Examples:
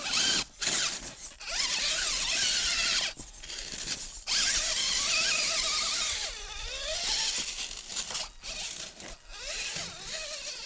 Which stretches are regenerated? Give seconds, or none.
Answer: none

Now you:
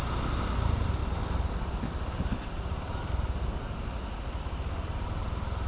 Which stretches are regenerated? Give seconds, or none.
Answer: 0.0-1.0; 4.4-5.7